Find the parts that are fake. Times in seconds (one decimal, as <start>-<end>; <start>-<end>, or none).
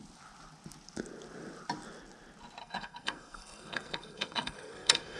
2.6-5.2